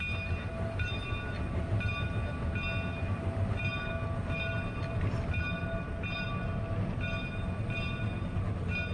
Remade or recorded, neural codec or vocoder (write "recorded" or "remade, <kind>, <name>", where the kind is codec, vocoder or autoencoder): recorded